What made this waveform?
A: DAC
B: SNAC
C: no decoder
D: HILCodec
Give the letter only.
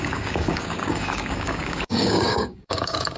A